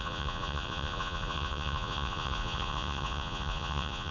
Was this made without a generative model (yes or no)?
no